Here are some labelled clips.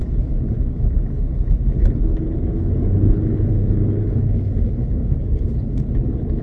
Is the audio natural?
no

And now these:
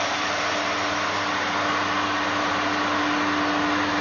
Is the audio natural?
yes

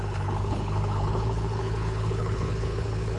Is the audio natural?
no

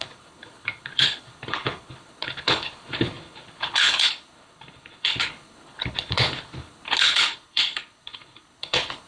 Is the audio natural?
no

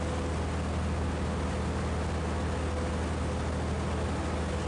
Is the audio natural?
yes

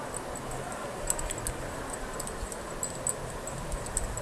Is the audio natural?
yes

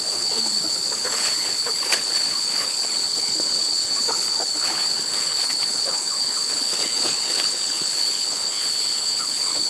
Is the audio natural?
no